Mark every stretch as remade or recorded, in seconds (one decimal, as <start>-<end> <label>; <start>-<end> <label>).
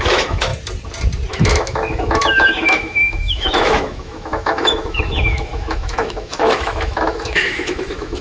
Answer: 0.0-0.5 remade; 0.5-1.3 recorded; 1.3-8.2 remade